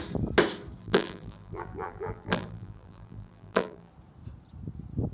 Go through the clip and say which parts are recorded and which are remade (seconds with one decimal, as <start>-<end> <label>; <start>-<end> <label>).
0.0-0.8 recorded; 0.8-3.9 remade; 3.9-5.1 recorded